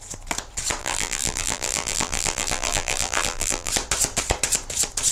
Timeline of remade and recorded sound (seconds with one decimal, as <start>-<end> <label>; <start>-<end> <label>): 0.0-0.8 recorded; 0.8-3.7 remade; 3.7-5.1 recorded